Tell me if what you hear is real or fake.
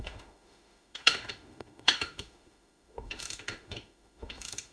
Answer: fake